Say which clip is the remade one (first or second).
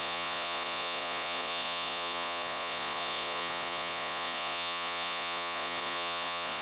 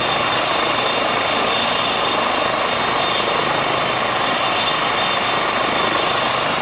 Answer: first